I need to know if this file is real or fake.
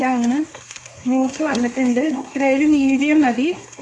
fake